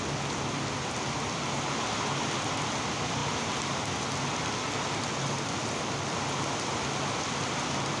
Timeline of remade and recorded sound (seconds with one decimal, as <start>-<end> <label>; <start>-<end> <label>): 0.0-8.0 recorded